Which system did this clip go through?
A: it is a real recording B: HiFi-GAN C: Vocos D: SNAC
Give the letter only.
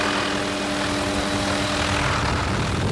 A